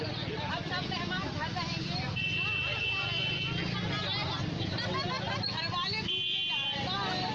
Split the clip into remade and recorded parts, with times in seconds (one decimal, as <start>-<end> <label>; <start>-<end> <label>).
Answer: 0.0-7.3 recorded